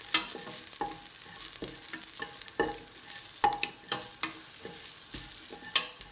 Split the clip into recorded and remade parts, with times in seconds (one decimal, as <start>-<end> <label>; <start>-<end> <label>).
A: 0.0-6.1 recorded